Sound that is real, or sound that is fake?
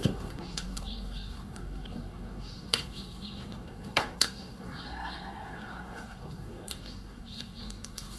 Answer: fake